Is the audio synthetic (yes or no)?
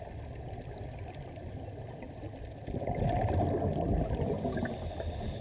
no